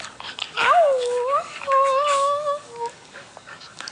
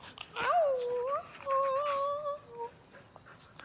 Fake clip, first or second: first